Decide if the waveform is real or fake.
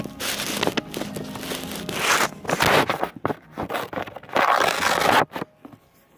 real